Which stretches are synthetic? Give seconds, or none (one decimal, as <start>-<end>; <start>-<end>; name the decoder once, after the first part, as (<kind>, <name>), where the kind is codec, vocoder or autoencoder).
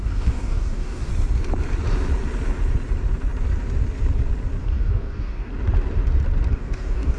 0.0-1.1 (codec, DAC); 4.6-5.5; 6.5-7.2